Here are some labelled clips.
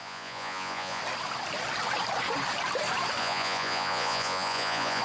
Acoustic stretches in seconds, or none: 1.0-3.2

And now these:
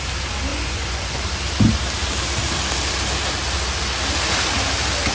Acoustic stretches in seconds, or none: 0.0-0.5; 1.2-5.1

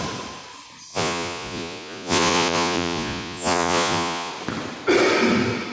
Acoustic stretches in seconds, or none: 0.0-0.9; 4.3-5.7

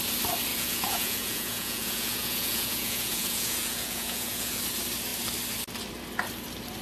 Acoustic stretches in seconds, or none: 0.0-0.5; 4.6-6.8

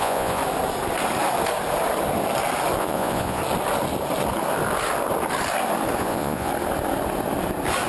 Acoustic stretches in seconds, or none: 0.4-2.8; 3.4-6.0; 6.5-7.9

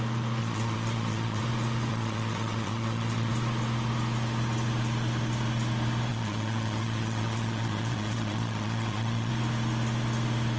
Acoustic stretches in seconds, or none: 0.0-0.4; 1.4-1.9; 3.3-6.1; 9.3-10.6

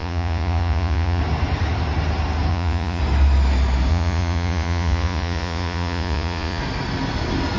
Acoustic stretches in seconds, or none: 1.2-2.5; 3.0-3.9; 6.6-7.6